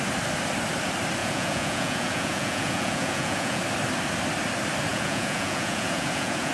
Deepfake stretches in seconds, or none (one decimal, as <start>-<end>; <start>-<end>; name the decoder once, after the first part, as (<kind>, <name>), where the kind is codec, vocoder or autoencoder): 1.2-3.6 (vocoder, Vocos); 4.9-6.5